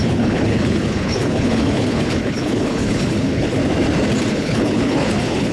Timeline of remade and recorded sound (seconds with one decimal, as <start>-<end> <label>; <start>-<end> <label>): 0.0-3.6 remade; 3.6-4.3 recorded; 4.3-5.5 remade

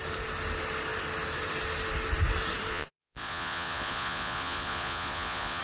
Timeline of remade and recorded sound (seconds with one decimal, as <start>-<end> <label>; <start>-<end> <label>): 0.0-2.7 recorded; 2.7-5.6 remade

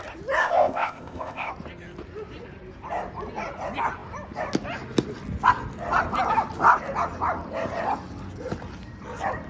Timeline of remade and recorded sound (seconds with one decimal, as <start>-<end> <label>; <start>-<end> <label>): 0.0-0.4 recorded; 0.4-1.5 remade; 1.5-9.5 recorded

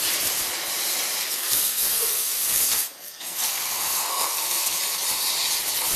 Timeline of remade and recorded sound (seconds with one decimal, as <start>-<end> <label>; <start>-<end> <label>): 0.0-1.2 recorded; 1.2-4.8 remade; 4.8-6.0 recorded

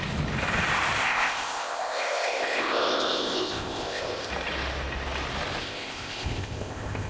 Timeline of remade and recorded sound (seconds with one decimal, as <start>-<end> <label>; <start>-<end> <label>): 0.0-1.0 recorded; 1.0-4.3 remade; 4.3-5.6 recorded; 5.6-7.1 remade

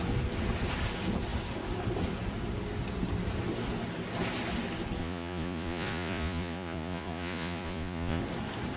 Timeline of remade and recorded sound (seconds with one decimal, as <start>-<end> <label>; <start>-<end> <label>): 0.0-5.0 recorded; 5.0-8.2 remade; 8.2-8.8 recorded

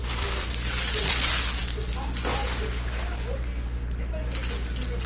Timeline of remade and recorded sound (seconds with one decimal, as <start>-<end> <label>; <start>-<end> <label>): 0.0-1.6 remade; 1.6-5.1 recorded

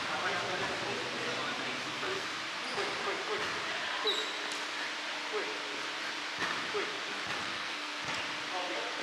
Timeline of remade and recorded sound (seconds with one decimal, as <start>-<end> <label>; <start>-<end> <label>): 0.0-1.9 recorded; 1.9-2.4 remade; 2.4-7.4 recorded; 7.4-8.0 remade; 8.0-9.0 recorded